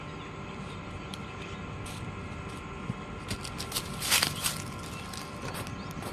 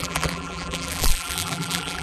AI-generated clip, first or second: second